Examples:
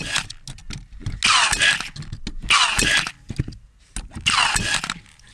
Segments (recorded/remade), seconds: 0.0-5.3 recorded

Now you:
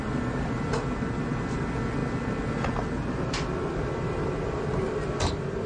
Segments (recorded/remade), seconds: 0.0-5.7 recorded

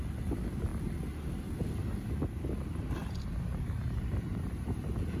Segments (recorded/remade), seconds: 0.0-5.2 recorded

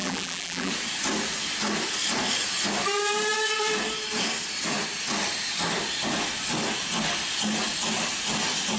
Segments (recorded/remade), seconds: 0.0-0.7 remade; 0.7-8.8 recorded

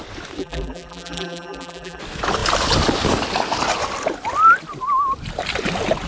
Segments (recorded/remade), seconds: 0.0-0.4 recorded; 0.4-2.0 remade; 2.0-6.1 recorded

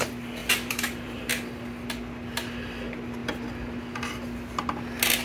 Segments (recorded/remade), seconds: 0.0-0.4 recorded; 0.4-1.2 remade; 1.2-5.2 recorded

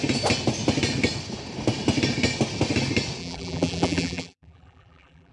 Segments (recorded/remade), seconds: 0.0-3.2 recorded; 3.2-5.3 remade

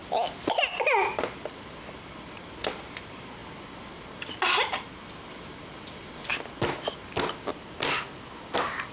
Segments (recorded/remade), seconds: 0.0-8.9 recorded